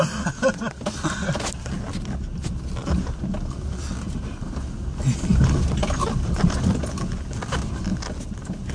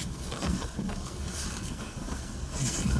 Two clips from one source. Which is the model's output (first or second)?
second